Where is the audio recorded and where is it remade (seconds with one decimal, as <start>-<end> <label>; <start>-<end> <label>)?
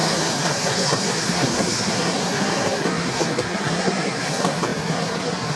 0.0-5.6 remade